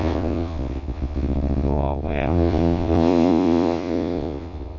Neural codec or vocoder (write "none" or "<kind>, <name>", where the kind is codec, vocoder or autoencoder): vocoder, Vocos